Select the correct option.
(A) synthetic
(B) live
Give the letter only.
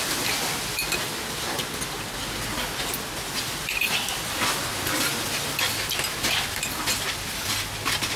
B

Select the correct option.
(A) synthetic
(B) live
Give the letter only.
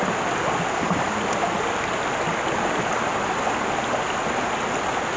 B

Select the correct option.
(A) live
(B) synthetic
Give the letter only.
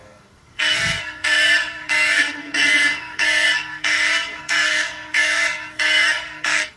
B